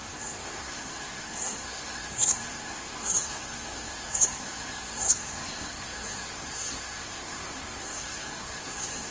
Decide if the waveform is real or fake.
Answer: fake